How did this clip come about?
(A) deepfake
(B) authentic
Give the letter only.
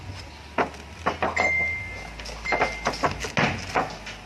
B